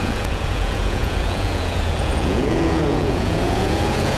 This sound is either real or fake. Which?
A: fake